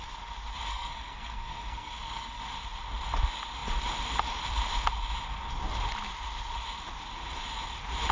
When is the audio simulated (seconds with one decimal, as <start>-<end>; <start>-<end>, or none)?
0.7-2.4

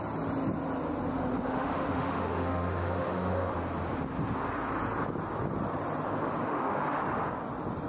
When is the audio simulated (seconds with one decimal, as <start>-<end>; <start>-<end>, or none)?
1.4-3.5; 6.4-7.0

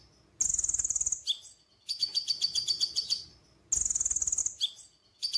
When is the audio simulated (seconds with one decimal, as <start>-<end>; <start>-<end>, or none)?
none

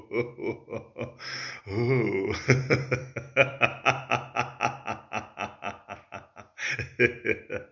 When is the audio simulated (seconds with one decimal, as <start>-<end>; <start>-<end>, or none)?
3.0-3.5